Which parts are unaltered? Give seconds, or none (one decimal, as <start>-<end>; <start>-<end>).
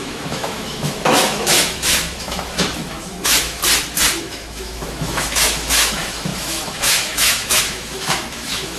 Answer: 3.6-4.2